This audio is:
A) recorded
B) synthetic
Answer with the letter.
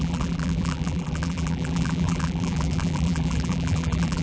B